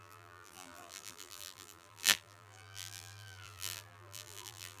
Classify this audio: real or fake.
fake